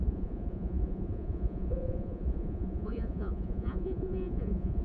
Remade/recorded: remade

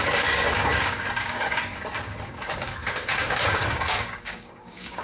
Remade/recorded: remade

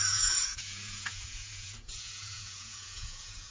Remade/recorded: remade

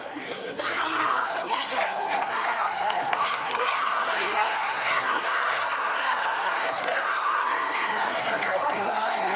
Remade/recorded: remade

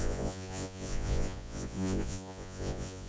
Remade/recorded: remade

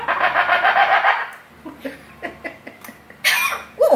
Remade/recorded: recorded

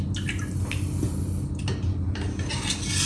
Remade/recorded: recorded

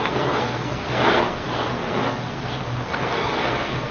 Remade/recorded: remade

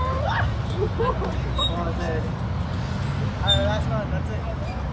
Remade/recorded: recorded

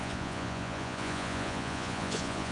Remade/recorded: remade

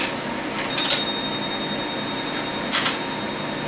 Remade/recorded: recorded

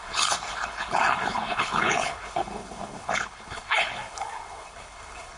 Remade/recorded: remade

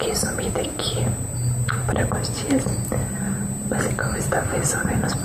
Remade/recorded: recorded